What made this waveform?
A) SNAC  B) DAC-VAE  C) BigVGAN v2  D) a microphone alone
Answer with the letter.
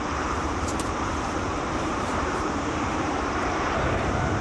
C